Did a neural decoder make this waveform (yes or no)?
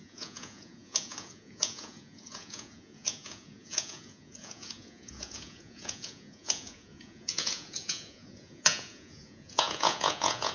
yes